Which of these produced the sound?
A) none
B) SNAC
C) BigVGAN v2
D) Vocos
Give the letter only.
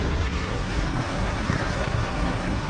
B